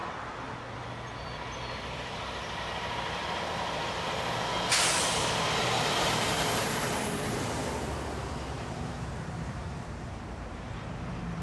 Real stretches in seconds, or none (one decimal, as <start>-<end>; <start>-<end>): 0.0-2.6; 3.2-5.6